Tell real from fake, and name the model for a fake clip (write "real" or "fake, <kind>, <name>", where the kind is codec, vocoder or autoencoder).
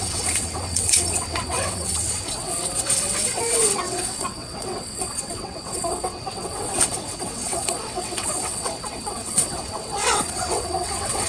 fake, vocoder, WaveNeXt